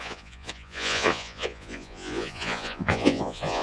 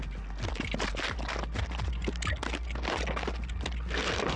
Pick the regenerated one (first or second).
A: first